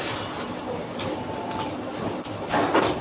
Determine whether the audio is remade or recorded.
recorded